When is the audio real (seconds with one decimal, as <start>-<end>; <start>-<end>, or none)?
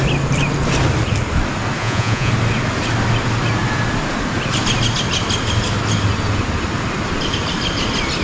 0.0-1.8; 2.3-8.2